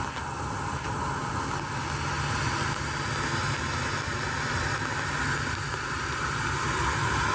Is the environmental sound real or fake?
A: real